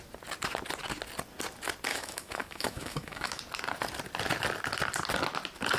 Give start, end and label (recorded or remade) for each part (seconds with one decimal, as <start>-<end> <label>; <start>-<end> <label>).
0.0-1.9 recorded; 1.9-3.4 remade; 3.4-5.8 recorded

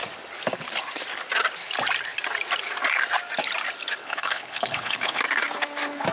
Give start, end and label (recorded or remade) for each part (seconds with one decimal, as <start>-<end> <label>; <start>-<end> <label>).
0.0-4.0 recorded; 4.0-5.2 remade; 5.2-6.1 recorded

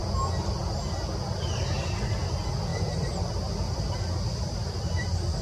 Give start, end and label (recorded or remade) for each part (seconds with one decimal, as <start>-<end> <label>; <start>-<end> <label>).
0.0-2.7 recorded; 2.7-5.4 remade

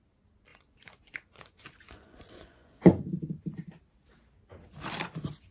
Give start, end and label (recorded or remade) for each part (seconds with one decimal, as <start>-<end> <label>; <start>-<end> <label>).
0.0-0.5 recorded; 0.5-3.3 remade; 3.3-5.5 recorded

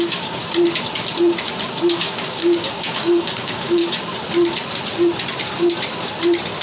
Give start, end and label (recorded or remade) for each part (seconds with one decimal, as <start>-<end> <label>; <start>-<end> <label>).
0.0-0.4 remade; 0.4-2.0 recorded; 2.0-3.8 remade; 3.8-6.6 recorded